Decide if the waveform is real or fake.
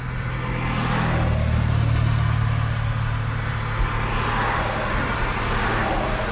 real